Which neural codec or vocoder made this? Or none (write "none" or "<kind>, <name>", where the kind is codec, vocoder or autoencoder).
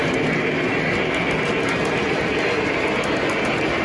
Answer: none